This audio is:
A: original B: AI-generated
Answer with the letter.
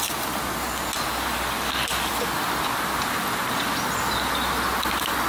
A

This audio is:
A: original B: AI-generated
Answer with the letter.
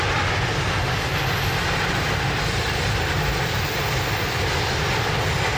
A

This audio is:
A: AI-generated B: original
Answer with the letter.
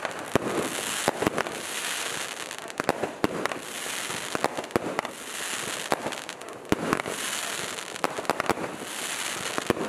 B